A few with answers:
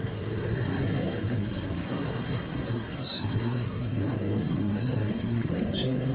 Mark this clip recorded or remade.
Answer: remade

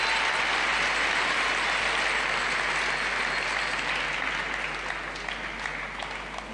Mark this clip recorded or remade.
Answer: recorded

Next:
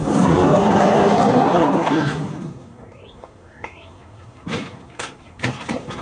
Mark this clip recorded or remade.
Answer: remade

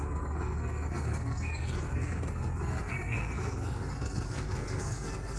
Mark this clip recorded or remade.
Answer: remade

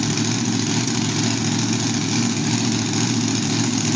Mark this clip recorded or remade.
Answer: recorded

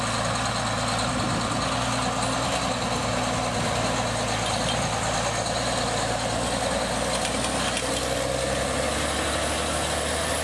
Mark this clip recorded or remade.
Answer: recorded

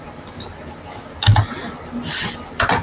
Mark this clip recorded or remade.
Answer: recorded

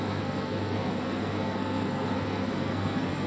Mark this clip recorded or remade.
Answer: remade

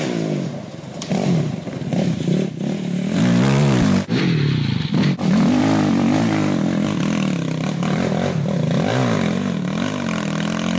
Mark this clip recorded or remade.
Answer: recorded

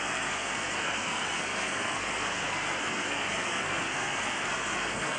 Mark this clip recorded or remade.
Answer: remade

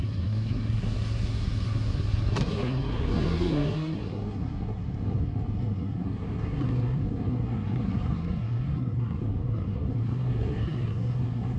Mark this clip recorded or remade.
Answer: remade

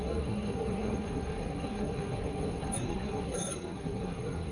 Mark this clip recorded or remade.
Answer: remade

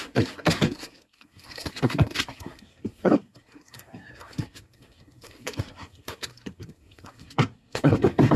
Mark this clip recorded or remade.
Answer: remade